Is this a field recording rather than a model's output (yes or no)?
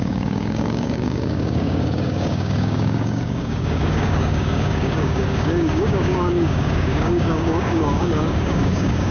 no